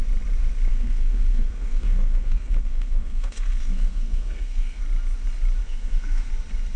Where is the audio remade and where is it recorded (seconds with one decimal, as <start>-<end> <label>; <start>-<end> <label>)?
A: 0.0-0.7 recorded; 0.7-4.8 remade; 4.8-5.6 recorded; 5.6-6.3 remade; 6.3-6.8 recorded